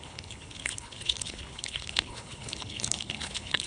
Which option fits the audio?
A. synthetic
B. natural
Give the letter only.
A